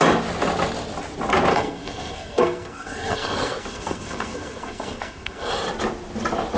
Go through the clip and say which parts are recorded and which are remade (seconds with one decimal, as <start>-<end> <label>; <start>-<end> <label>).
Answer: 0.0-1.5 recorded; 1.5-5.5 remade; 5.5-6.6 recorded